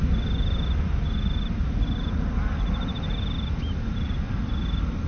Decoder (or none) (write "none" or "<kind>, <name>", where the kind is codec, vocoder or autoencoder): none